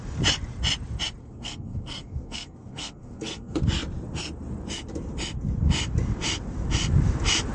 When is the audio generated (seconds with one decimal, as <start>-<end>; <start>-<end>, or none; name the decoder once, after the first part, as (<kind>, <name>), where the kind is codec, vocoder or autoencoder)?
1.2-3.6 (codec, SNAC)